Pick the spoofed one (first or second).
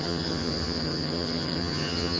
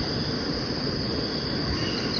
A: first